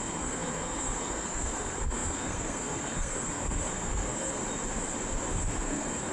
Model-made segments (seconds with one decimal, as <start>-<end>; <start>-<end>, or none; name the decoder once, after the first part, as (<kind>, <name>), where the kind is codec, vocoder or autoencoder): 0.0-4.4 (codec, SNAC); 5.3-6.1